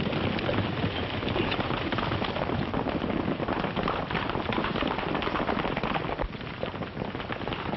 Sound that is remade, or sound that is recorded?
recorded